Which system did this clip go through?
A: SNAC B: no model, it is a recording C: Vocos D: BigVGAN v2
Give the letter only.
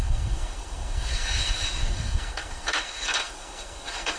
A